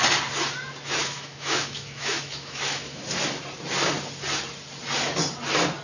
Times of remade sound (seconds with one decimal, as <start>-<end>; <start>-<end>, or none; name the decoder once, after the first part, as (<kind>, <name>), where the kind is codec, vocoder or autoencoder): 1.0-3.0 (autoencoder, DAC-VAE)